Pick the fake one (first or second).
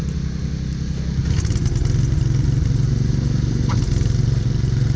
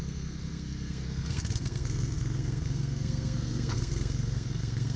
second